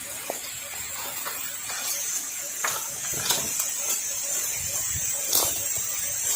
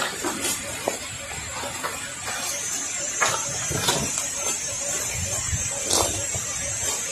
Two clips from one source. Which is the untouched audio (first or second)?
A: second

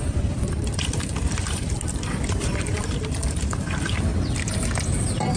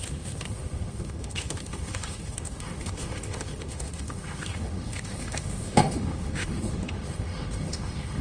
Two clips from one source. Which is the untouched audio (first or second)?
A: first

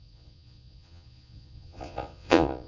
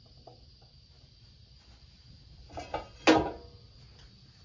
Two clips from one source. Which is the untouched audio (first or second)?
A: second